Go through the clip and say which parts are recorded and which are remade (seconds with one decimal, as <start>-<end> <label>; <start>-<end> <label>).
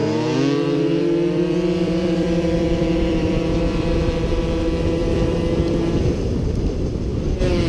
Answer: 0.0-4.0 remade; 4.0-7.7 recorded